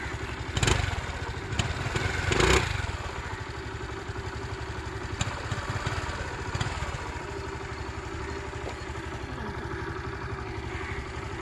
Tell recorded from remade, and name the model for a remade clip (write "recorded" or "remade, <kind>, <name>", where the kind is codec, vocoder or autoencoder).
recorded